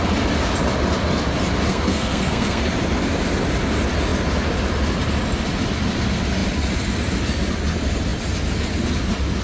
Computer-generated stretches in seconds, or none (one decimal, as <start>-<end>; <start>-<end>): 1.7-2.6